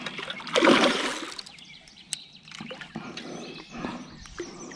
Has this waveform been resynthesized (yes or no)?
no